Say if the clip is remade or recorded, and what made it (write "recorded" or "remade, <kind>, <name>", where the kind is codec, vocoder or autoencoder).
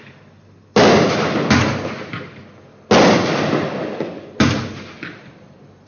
recorded